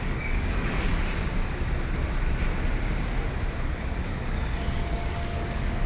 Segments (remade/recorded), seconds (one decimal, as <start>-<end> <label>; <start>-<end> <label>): 0.0-0.9 remade; 0.9-3.6 recorded; 3.6-5.9 remade